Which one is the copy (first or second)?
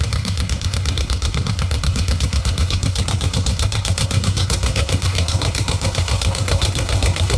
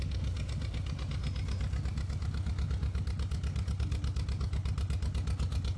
first